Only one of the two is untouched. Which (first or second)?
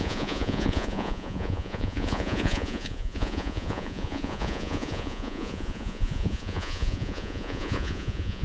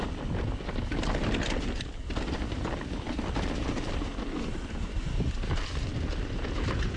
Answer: second